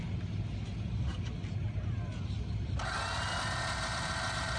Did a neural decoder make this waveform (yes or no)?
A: no